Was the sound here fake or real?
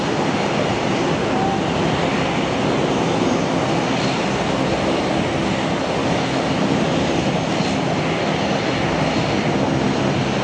real